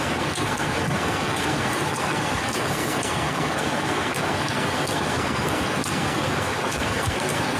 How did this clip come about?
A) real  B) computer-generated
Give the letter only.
B